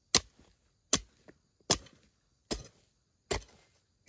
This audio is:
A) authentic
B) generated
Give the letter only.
A